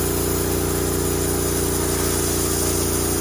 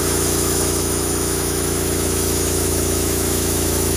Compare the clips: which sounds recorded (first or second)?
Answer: first